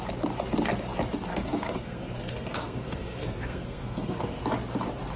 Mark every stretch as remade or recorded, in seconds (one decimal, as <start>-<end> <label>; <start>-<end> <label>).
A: 0.0-1.3 recorded; 1.3-4.4 remade; 4.4-5.2 recorded